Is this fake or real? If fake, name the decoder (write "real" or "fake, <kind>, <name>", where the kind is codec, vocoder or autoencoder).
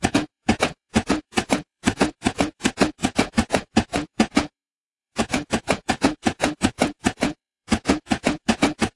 fake, vocoder, Vocos